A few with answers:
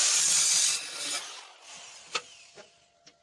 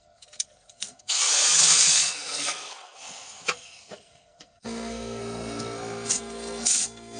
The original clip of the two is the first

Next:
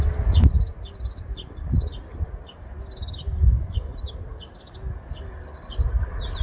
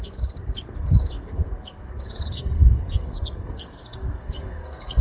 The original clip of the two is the first